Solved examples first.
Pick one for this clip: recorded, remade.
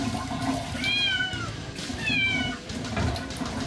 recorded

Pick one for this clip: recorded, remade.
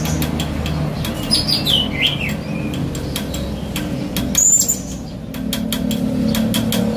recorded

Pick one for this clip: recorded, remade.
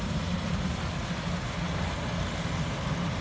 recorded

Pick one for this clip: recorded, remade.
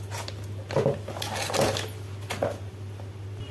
recorded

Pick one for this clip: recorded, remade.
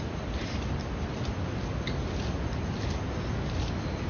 recorded